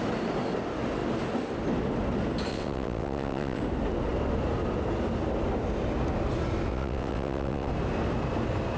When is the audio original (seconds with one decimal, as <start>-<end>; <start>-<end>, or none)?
0.0-2.5; 3.6-6.7; 7.7-8.8